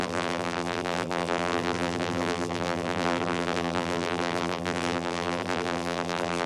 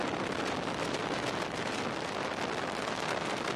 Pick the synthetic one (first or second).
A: first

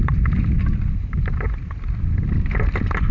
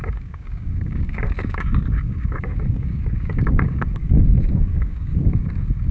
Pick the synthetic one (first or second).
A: second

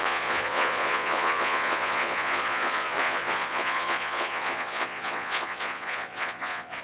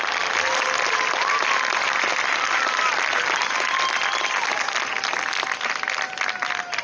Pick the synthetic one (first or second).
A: first